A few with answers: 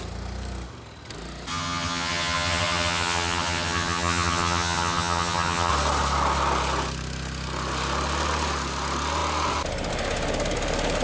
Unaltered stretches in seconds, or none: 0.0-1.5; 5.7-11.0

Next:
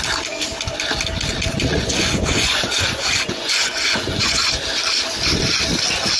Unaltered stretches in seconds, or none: 0.0-1.7; 4.5-6.2

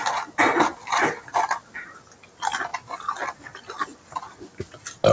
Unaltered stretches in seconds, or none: 0.0-5.1